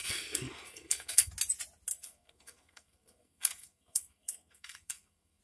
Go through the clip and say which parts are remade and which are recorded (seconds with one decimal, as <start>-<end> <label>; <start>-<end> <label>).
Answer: 0.0-1.3 remade; 1.3-1.9 recorded; 1.9-5.4 remade